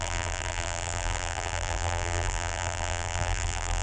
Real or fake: fake